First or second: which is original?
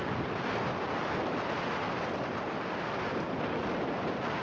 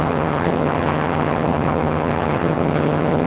first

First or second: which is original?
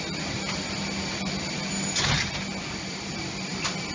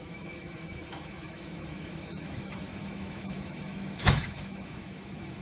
first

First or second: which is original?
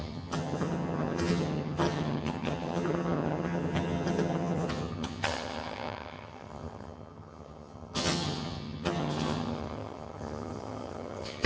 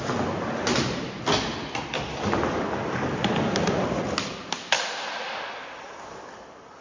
second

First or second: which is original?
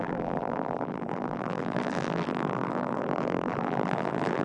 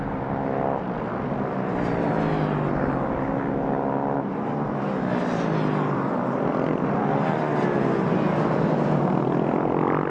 second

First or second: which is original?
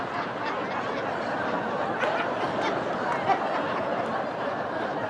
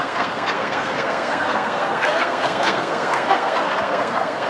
first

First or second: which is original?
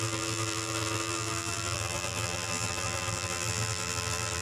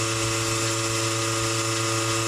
second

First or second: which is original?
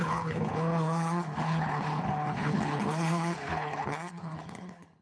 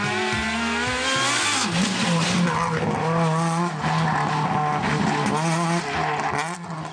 second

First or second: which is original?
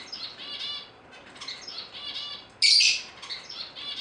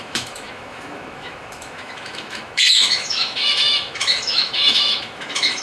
first